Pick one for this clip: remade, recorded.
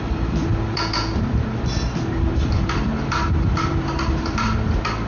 remade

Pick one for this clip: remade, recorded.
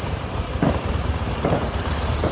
remade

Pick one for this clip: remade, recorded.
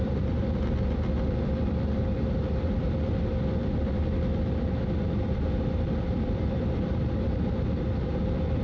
remade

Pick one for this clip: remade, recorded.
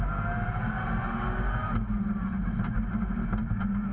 remade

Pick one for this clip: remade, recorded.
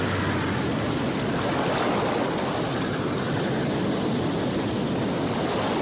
remade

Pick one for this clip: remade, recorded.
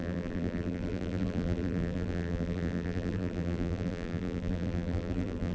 remade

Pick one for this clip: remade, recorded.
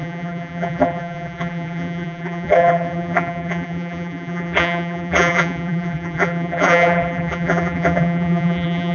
remade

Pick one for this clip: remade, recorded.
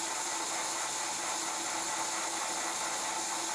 recorded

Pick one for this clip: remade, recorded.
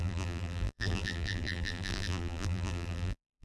remade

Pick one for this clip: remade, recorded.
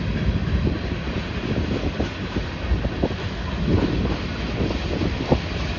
recorded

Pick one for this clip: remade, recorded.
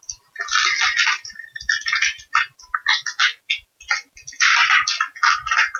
recorded